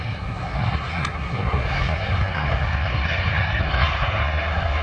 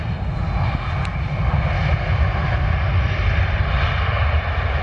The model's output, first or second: first